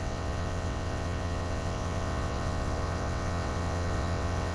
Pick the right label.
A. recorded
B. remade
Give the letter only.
B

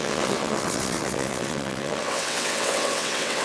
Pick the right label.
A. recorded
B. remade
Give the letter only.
B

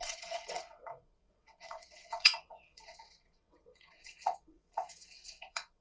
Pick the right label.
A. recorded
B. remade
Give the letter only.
B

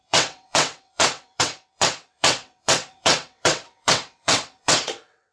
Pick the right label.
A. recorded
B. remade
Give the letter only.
B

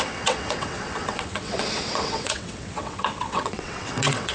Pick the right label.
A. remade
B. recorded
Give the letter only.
A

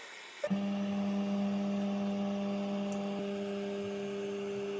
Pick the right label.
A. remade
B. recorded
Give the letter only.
B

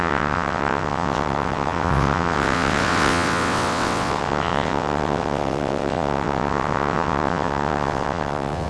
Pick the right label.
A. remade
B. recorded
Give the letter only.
A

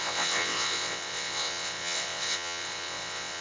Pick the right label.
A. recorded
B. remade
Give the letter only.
B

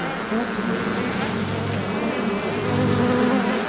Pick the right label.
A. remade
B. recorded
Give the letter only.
B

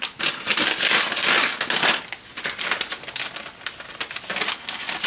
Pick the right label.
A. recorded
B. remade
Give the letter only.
A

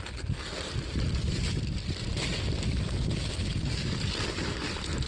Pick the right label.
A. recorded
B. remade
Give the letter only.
A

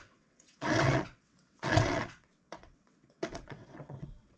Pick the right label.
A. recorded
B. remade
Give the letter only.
B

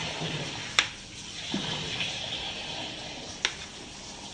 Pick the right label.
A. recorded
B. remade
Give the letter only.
A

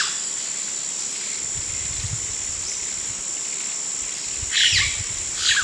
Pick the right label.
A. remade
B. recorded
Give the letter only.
B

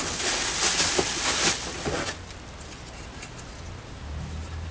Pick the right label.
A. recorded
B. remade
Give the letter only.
A